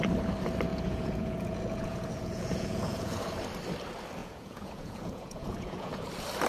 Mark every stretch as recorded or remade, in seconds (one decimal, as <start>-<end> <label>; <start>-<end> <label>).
0.0-0.7 recorded; 0.7-3.2 remade; 3.2-4.2 recorded; 4.2-6.1 remade; 6.1-6.5 recorded